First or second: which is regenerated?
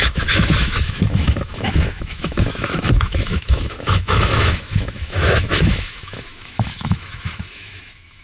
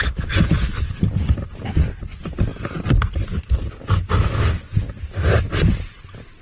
first